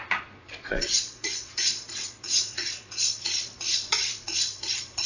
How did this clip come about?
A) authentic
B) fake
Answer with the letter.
B